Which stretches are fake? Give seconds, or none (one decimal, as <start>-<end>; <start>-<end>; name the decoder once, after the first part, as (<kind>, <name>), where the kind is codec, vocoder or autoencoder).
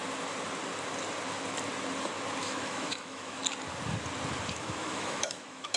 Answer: 2.4-3.4 (autoencoder, DAC-VAE); 4.5-5.8